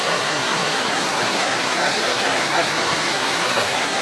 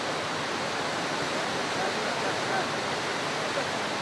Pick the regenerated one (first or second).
first